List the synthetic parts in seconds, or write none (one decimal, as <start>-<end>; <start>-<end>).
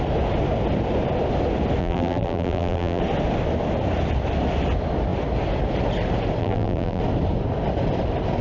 1.8-3.0; 6.4-7.0